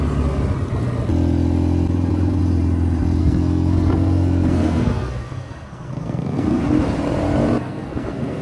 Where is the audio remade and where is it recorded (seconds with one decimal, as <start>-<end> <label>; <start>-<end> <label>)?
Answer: 0.0-3.2 recorded; 3.2-6.6 remade; 6.6-7.6 recorded; 7.6-8.4 remade